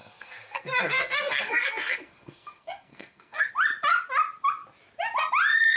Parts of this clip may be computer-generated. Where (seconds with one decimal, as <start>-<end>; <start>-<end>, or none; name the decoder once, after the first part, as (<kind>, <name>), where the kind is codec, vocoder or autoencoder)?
0.0-3.5 (codec, SNAC)